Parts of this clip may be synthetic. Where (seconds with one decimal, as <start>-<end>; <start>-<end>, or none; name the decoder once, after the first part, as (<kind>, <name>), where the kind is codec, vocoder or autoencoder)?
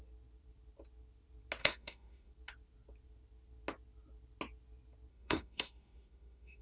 1.6-2.3 (autoencoder, DAC-VAE); 5.1-6.6